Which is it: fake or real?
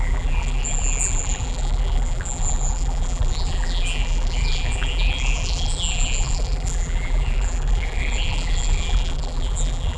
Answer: fake